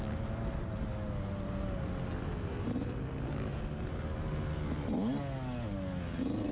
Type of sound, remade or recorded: recorded